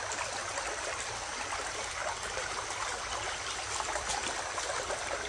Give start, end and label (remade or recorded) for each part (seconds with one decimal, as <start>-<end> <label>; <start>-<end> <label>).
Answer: 0.0-0.4 recorded; 0.4-1.6 remade; 1.6-5.3 recorded